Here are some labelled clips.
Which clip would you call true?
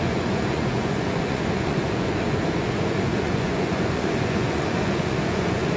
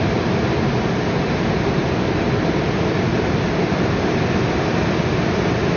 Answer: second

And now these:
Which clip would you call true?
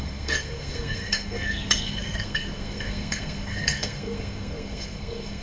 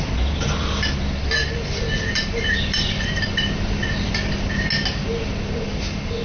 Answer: second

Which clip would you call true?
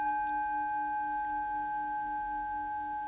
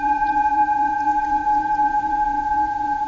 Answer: first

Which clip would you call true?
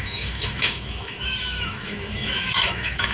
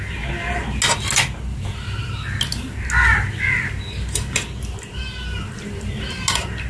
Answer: second